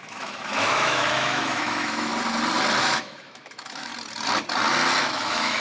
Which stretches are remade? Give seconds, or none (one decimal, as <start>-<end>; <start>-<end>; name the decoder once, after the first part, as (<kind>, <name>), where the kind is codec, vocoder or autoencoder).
0.0-2.1 (autoencoder, DAC-VAE); 2.8-3.9; 5.0-5.6